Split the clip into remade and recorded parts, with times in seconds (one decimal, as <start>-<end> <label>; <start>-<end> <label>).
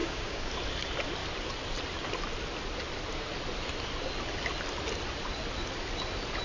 0.0-0.5 remade; 0.5-6.4 recorded